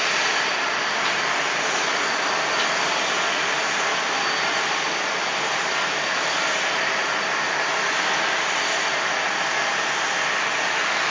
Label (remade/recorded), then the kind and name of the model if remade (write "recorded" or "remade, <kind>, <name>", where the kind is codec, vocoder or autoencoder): recorded